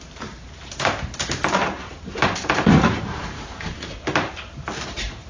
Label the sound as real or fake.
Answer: fake